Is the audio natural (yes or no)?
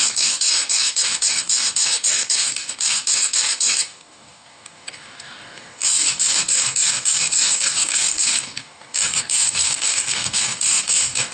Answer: no